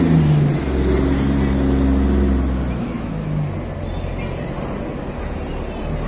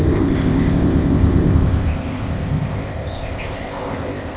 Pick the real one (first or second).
first